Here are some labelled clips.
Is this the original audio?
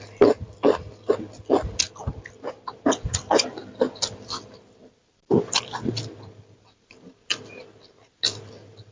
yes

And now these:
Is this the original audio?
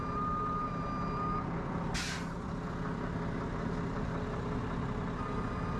yes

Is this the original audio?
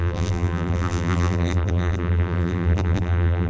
no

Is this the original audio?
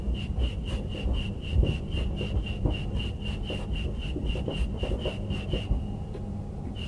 yes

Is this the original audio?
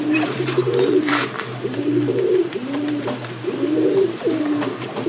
no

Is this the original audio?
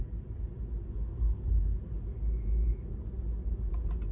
yes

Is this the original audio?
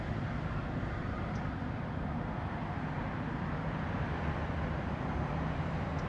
no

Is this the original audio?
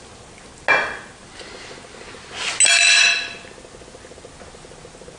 yes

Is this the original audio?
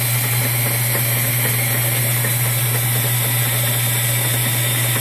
yes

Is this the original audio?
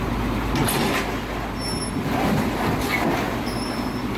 yes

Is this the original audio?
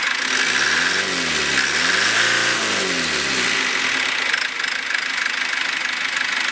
yes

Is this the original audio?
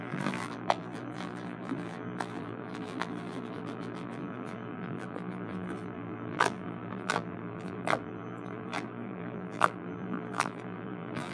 no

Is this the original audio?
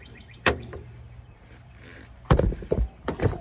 no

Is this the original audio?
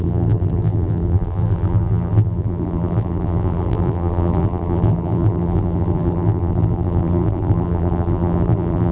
no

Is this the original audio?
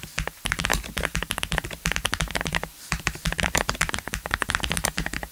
no